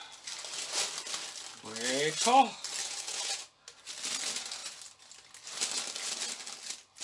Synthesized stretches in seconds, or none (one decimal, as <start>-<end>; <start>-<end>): 2.8-3.4